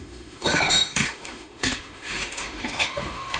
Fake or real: fake